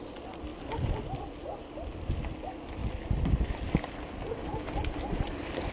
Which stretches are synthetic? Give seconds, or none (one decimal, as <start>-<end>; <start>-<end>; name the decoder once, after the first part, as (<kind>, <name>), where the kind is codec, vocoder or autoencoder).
none